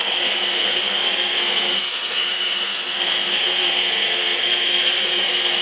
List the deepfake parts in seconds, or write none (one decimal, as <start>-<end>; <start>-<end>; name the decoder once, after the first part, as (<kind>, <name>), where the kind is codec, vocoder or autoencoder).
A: 0.0-5.6 (codec, SNAC)